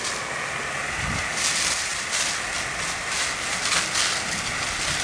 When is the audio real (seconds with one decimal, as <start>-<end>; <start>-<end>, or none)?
0.0-5.0